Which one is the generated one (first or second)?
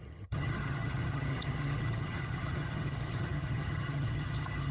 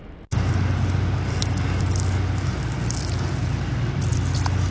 first